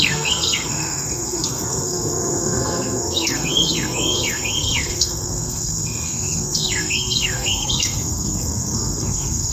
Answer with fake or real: fake